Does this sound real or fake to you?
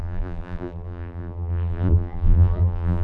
fake